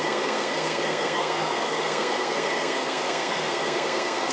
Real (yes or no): no